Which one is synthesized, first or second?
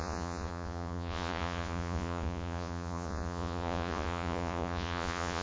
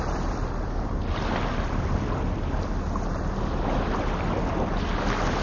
first